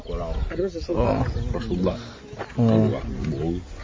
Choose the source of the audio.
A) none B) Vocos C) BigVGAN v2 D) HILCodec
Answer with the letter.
A